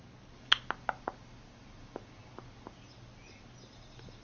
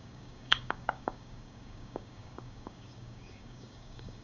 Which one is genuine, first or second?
first